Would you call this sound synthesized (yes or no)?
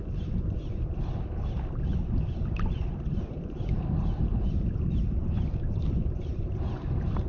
no